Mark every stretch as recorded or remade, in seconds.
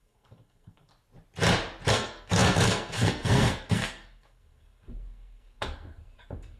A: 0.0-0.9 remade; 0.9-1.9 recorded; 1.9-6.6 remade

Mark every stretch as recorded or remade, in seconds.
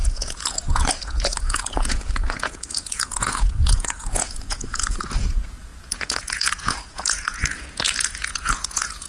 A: 0.0-9.1 remade